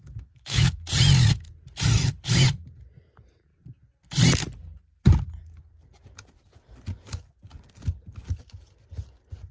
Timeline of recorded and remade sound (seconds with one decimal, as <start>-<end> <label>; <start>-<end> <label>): 0.0-0.7 remade; 0.7-9.5 recorded